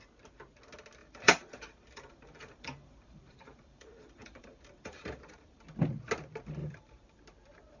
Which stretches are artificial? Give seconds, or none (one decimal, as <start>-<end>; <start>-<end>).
1.0-5.6; 6.6-7.2